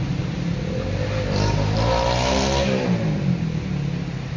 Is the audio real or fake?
real